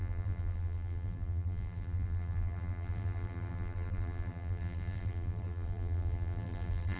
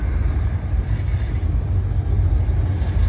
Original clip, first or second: second